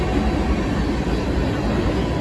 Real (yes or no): yes